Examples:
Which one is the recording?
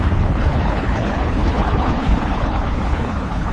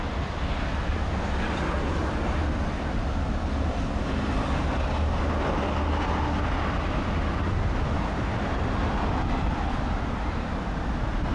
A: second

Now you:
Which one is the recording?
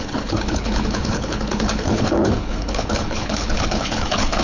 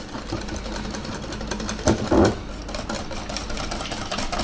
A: second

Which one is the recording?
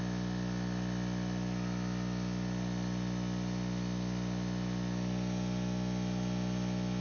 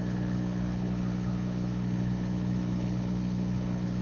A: first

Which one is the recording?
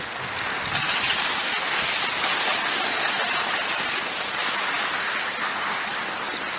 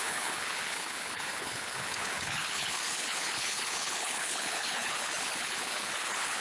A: first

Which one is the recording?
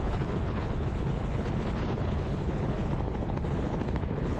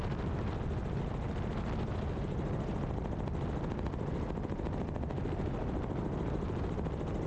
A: second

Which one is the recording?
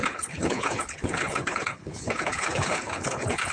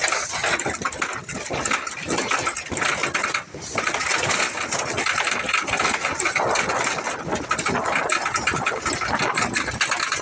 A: second